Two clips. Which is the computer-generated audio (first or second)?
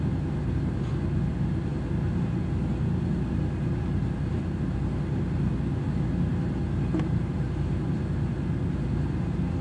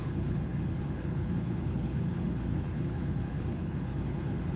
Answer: second